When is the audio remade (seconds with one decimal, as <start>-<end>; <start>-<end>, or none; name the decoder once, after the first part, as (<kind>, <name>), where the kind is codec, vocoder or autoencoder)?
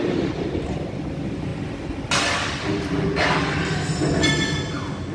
none